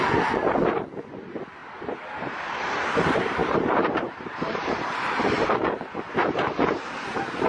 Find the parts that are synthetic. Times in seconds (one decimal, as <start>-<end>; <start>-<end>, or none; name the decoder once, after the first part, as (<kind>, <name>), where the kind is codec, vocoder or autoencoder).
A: 3.4-5.7 (vocoder, BigVGAN v2)